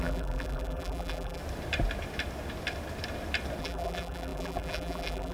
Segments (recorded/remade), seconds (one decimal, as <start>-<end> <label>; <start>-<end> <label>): 0.0-1.4 remade; 1.4-3.6 recorded; 3.6-5.3 remade